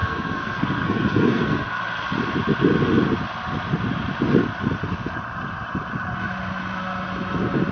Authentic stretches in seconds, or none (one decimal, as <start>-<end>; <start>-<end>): 1.8-7.7